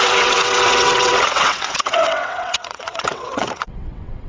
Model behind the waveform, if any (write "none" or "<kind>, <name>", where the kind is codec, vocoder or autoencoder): vocoder, WaveNeXt